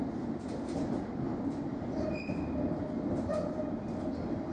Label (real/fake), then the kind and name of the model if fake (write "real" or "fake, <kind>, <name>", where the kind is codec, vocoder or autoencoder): real